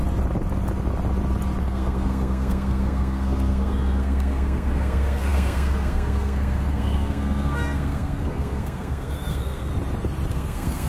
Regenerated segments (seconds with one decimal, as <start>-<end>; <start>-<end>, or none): 1.6-9.7; 10.3-10.9